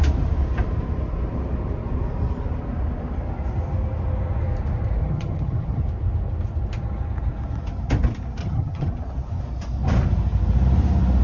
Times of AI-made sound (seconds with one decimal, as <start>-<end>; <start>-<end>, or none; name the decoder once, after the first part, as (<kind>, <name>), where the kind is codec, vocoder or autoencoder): 5.0-5.8 (vocoder, HiFi-GAN); 8.4-8.9